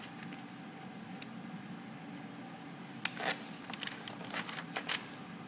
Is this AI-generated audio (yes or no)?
no